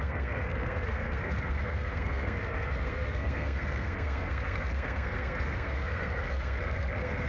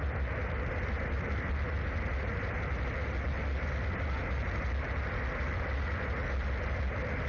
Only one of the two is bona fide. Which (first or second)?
second